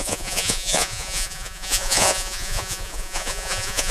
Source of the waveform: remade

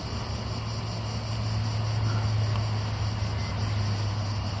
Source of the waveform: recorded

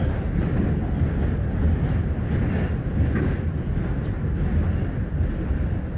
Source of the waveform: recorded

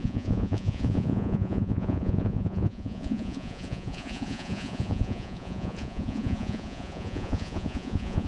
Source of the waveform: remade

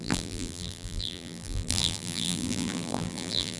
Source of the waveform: remade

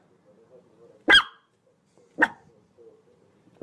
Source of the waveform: recorded